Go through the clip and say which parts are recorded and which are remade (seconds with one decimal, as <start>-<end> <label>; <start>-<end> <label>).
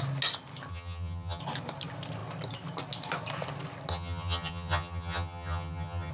0.0-0.7 recorded; 0.7-1.4 remade; 1.4-3.9 recorded; 3.9-6.1 remade